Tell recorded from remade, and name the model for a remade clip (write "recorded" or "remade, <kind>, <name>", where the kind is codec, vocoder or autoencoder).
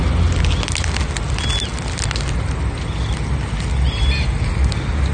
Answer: recorded